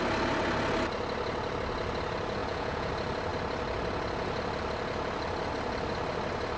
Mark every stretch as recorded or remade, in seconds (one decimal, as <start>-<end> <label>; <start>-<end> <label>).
0.0-2.4 recorded; 2.4-2.9 remade; 2.9-6.6 recorded